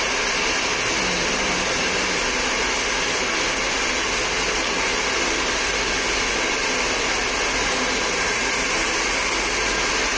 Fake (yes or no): no